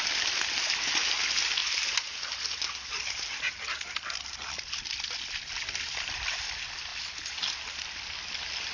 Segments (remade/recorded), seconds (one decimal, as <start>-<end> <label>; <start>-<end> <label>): 0.0-8.7 recorded

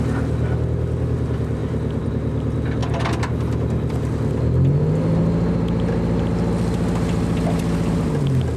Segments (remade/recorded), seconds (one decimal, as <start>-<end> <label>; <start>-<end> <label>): 0.0-1.6 recorded; 1.6-2.1 remade; 2.1-8.6 recorded